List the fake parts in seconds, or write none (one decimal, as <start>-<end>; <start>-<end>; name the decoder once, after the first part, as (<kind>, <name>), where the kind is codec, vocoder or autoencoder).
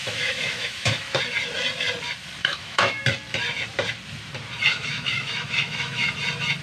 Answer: 0.0-1.2 (autoencoder, DAC-VAE); 2.4-3.0; 4.7-6.1